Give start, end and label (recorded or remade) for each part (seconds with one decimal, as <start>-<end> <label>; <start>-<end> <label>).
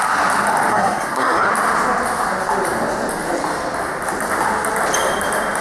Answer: 0.0-0.7 recorded; 0.7-1.5 remade; 1.5-5.6 recorded